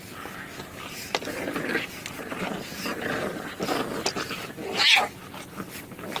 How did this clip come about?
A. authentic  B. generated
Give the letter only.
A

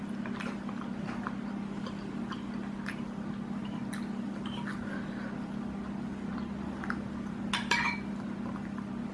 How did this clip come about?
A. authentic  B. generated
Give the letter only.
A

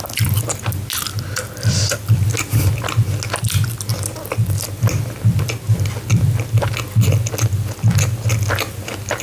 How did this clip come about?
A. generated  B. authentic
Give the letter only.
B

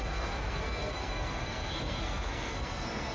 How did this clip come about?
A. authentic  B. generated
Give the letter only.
B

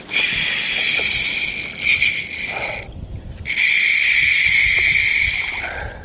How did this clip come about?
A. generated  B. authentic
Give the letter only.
B